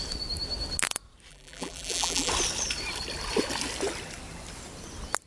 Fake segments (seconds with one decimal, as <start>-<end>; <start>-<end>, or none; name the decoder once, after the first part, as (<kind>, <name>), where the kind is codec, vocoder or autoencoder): 1.3-2.3 (vocoder, BigVGAN v2)